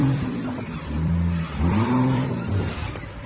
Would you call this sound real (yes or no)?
no